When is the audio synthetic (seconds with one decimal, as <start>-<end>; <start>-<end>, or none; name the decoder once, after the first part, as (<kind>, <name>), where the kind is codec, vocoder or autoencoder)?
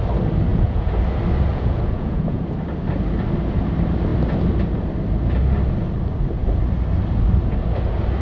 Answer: 0.5-1.0 (vocoder, Vocos); 1.5-2.4